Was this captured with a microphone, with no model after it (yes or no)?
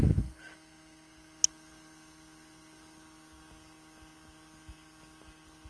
yes